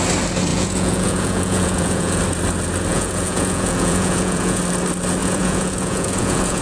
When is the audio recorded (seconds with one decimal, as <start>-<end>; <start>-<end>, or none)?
0.0-0.5; 2.2-2.9; 4.6-5.2